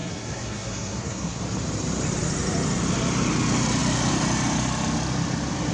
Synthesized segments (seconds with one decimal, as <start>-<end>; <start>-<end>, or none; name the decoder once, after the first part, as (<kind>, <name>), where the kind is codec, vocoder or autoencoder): 0.0-1.4 (codec, SNAC)